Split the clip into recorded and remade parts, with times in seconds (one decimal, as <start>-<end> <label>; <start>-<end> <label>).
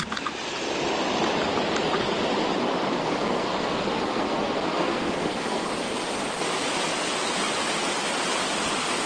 0.0-3.0 recorded; 3.0-5.7 remade; 5.7-9.1 recorded